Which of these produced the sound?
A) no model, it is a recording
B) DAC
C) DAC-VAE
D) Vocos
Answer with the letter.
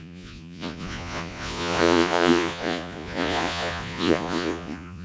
D